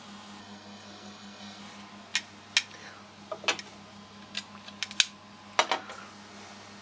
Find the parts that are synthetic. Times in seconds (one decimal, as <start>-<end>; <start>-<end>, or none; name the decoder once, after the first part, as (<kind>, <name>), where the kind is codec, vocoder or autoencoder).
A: 0.4-1.6 (codec, SNAC)